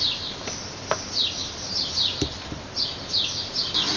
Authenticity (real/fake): real